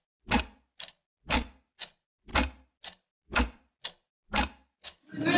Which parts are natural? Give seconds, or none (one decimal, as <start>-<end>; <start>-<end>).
0.0-5.4